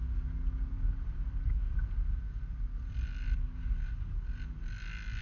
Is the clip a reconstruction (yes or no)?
no